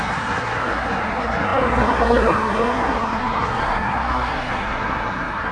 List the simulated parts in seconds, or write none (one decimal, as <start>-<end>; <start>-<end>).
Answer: 0.0-5.5